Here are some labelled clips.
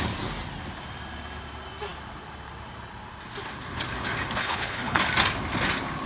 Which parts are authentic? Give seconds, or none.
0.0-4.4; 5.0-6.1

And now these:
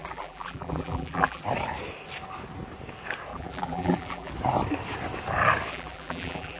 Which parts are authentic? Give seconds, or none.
1.4-3.3; 4.3-5.7